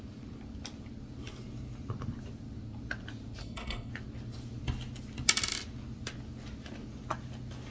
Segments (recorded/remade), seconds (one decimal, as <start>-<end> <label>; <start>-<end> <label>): 0.0-3.4 recorded; 3.4-3.9 remade; 3.9-7.7 recorded

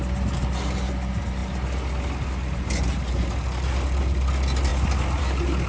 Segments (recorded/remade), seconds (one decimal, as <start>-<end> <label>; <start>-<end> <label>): 0.0-5.7 recorded

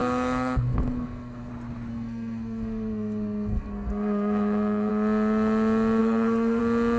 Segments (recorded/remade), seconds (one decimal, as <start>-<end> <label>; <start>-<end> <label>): 0.0-1.5 remade; 1.5-1.9 recorded; 1.9-4.9 remade; 4.9-6.0 recorded; 6.0-6.6 remade; 6.6-7.0 recorded

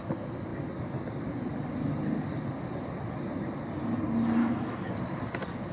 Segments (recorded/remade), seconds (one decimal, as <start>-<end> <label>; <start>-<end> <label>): 0.0-4.4 recorded; 4.4-4.9 remade; 4.9-5.7 recorded

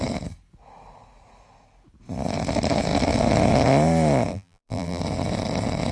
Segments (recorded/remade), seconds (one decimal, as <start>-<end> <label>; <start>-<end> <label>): 0.0-4.3 recorded; 4.3-5.0 remade; 5.0-5.9 recorded